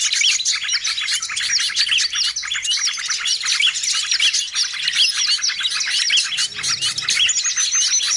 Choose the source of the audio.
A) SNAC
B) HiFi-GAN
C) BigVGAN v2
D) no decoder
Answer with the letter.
D